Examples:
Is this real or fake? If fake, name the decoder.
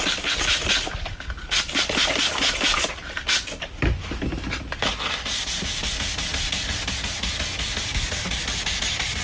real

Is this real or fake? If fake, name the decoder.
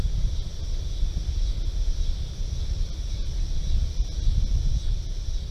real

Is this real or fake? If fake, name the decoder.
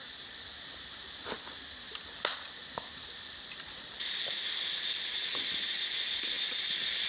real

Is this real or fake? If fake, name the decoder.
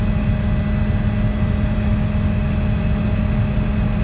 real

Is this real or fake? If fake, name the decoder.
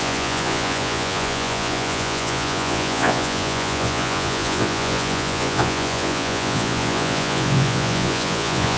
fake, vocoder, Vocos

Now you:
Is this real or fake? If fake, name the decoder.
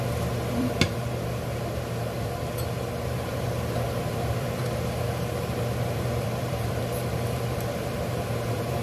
fake, vocoder, BigVGAN v2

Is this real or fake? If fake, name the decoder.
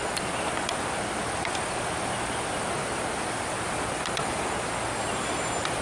real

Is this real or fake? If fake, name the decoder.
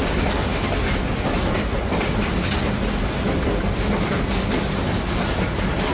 real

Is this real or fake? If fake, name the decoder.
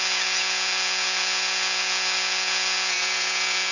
fake, vocoder, Vocos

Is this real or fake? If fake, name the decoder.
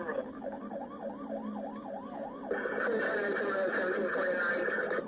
real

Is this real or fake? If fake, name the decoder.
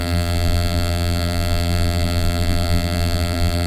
fake, vocoder, BigVGAN v2